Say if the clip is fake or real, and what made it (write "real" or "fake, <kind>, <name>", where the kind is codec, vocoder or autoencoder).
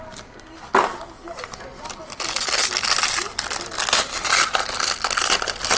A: real